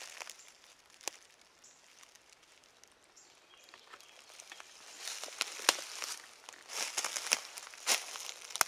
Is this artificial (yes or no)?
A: no